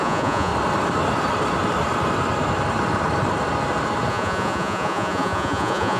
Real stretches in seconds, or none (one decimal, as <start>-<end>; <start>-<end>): 0.5-4.1